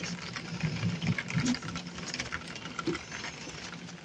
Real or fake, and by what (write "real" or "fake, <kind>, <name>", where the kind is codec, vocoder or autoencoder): real